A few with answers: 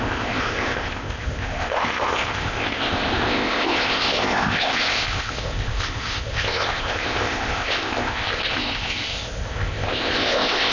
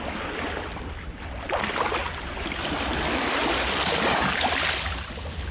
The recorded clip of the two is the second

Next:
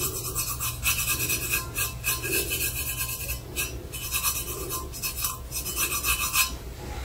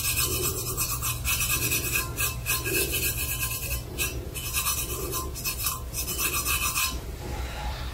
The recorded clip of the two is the first